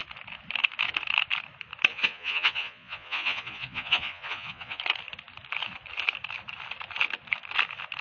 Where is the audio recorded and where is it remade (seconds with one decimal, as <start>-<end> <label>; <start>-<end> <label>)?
0.0-1.9 recorded; 1.9-4.8 remade; 4.8-8.0 recorded